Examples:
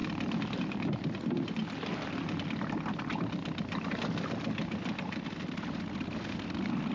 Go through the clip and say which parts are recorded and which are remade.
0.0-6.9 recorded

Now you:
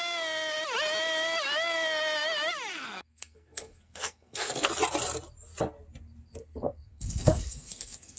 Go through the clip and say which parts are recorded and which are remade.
0.0-2.7 recorded; 2.7-4.7 remade; 4.7-6.4 recorded; 6.4-8.2 remade

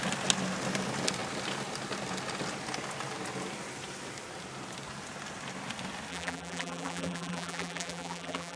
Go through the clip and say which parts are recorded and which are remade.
0.0-6.1 recorded; 6.1-8.6 remade

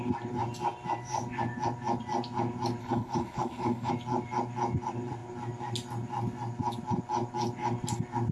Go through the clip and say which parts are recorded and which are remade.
0.0-2.8 recorded; 2.8-3.9 remade; 3.9-8.3 recorded

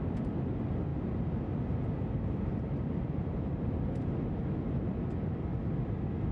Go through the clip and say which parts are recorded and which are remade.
0.0-0.9 recorded; 0.9-4.1 remade; 4.1-6.3 recorded

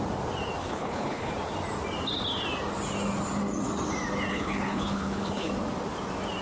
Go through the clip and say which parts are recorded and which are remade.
0.0-0.6 recorded; 0.6-1.3 remade; 1.3-4.3 recorded; 4.3-5.5 remade; 5.5-6.4 recorded

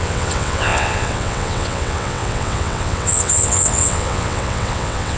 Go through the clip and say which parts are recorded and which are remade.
0.0-5.2 remade

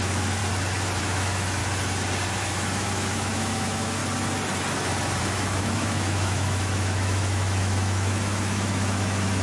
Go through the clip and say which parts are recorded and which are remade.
0.0-0.4 remade; 0.4-1.0 recorded; 1.0-1.6 remade; 1.6-2.4 recorded; 2.4-4.0 remade; 4.0-5.2 recorded; 5.2-9.4 remade